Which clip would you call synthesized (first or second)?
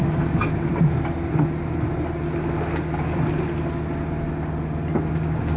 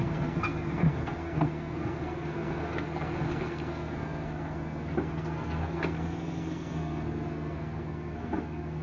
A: second